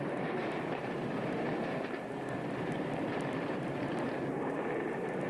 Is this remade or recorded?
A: remade